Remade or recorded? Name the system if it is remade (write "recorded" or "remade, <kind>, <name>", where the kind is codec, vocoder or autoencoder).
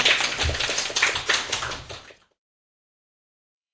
remade, vocoder, BigVGAN v2